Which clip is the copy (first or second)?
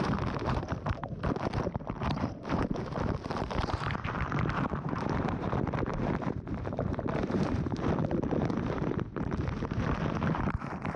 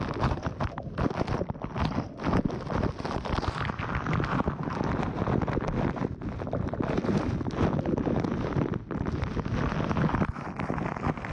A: first